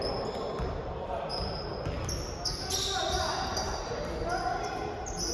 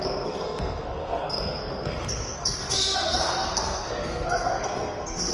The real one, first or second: first